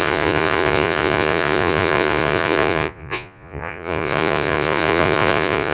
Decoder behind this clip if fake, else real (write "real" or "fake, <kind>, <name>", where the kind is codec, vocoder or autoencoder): fake, vocoder, Vocos